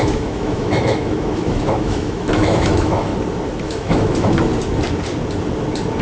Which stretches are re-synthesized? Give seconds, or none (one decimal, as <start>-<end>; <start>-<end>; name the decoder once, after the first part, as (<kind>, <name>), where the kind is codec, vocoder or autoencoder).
0.0-3.1 (autoencoder, DAC-VAE); 3.6-4.5